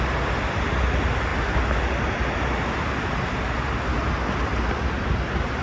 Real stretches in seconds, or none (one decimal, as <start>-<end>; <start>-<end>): 0.0-5.6